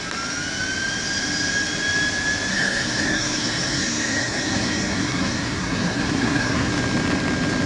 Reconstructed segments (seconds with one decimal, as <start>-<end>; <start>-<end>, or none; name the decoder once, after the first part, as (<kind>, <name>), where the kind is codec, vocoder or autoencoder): 2.5-6.7 (codec, SNAC)